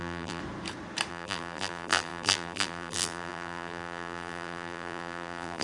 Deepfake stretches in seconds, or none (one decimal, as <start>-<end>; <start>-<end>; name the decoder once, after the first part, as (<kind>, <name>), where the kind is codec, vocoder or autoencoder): 0.0-0.4 (vocoder, BigVGAN v2); 1.1-5.6